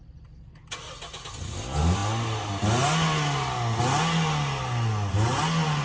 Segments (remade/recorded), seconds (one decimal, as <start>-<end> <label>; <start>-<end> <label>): 0.0-5.8 recorded